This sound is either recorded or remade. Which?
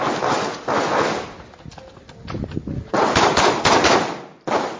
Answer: recorded